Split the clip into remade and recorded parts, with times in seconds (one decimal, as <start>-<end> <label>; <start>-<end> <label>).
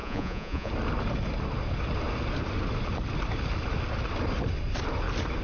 0.0-0.7 remade; 0.7-5.4 recorded